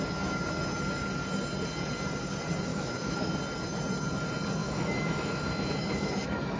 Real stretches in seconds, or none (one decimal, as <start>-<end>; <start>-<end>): 0.0-2.7; 3.3-4.6